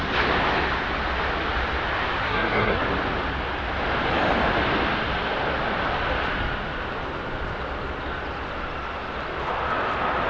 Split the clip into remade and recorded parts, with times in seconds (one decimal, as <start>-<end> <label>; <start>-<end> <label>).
0.0-2.2 recorded; 2.2-2.8 remade; 2.8-10.3 recorded